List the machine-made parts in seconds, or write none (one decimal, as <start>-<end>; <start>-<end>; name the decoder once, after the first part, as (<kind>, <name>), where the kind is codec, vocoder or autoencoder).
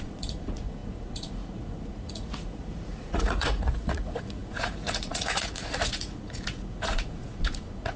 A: 0.0-8.0 (vocoder, Vocos)